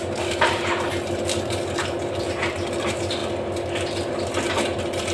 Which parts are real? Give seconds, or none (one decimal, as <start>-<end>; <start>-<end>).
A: 0.0-5.1